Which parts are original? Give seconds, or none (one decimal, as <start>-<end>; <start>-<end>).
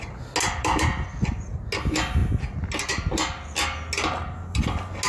0.0-5.1